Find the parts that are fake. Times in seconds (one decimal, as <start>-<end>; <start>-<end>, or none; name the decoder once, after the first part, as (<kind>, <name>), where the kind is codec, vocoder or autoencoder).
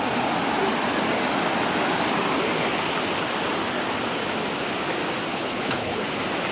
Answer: 5.3-6.1 (codec, HILCodec)